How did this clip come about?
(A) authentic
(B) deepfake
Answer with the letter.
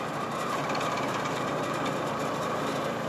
B